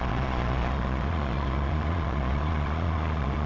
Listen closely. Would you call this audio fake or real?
fake